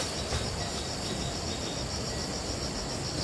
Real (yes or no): yes